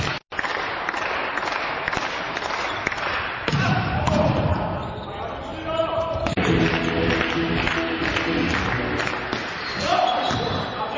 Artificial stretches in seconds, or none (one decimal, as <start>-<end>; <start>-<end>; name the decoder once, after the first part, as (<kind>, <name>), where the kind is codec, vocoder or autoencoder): 0.5-4.5 (vocoder, BigVGAN v2); 5.5-6.8